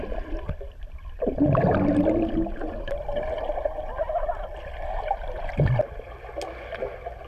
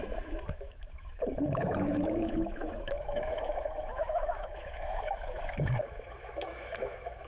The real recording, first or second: first